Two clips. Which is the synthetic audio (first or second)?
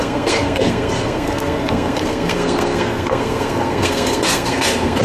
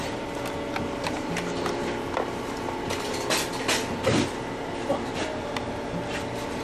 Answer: first